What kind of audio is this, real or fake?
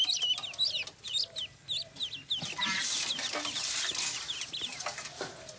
real